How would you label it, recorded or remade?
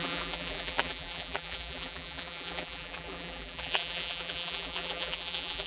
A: remade